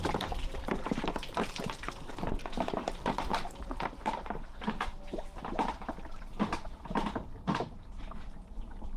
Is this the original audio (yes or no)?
no